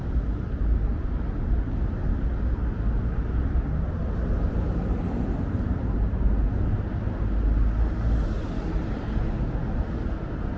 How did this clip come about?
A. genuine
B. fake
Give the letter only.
A